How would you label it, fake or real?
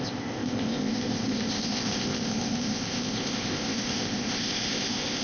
fake